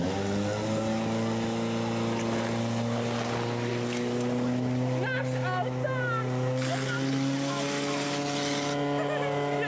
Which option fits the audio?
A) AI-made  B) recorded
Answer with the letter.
B